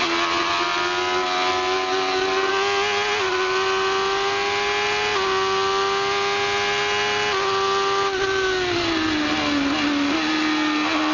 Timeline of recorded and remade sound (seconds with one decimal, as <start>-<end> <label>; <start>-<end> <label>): 0.0-11.1 recorded